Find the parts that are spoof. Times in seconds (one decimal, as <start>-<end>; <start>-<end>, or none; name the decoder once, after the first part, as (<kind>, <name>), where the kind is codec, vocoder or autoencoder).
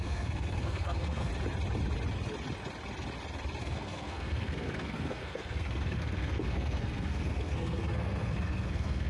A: 0.0-1.3 (codec, SNAC); 3.6-9.1